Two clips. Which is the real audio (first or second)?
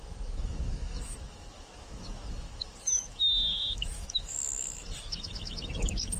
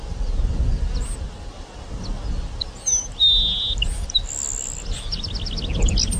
second